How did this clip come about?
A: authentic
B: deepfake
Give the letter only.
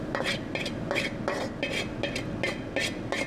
A